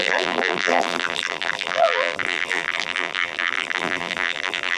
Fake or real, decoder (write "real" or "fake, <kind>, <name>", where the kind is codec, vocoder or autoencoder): fake, vocoder, BigVGAN v2